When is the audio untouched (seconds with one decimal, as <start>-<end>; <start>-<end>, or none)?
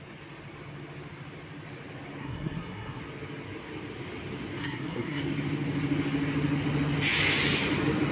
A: 0.0-2.2; 3.0-4.6; 5.2-8.1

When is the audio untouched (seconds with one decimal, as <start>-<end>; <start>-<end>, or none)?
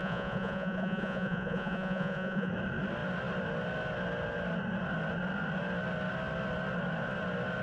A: 2.5-7.6